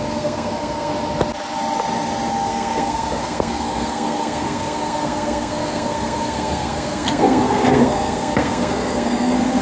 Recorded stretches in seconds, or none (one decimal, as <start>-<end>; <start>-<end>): 0.9-2.3